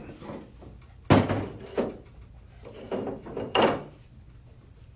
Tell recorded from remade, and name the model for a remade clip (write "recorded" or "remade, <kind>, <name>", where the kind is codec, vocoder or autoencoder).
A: recorded